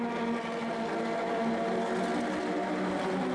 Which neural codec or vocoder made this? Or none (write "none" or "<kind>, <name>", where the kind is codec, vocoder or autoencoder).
none